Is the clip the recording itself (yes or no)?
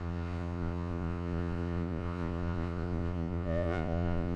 no